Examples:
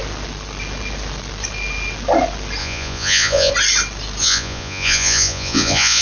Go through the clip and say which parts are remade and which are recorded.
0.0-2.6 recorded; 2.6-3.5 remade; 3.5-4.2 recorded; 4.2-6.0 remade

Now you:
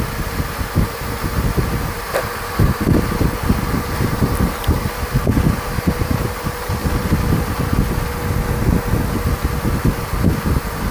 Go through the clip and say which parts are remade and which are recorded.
0.0-6.8 recorded; 6.8-7.5 remade; 7.5-10.9 recorded

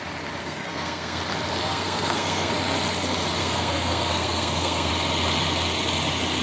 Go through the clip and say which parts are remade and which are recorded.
0.0-0.4 recorded; 0.4-1.2 remade; 1.2-1.6 recorded; 1.6-2.5 remade; 2.5-3.4 recorded; 3.4-4.9 remade; 4.9-6.4 recorded

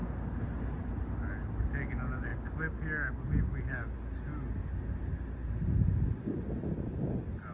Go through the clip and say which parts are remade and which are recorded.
0.0-7.5 recorded

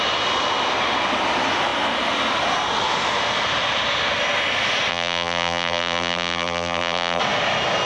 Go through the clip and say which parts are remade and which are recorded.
0.0-4.9 recorded; 4.9-7.2 remade; 7.2-7.9 recorded

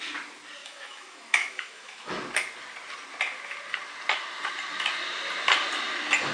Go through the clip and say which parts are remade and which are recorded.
0.0-0.6 recorded; 0.6-2.1 remade; 2.1-6.3 recorded